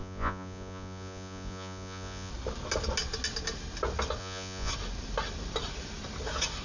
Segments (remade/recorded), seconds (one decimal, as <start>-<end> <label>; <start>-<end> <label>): 0.0-2.3 remade; 2.3-4.2 recorded; 4.2-4.7 remade; 4.7-6.6 recorded